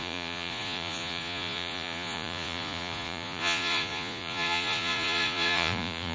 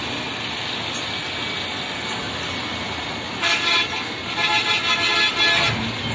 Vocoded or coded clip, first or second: first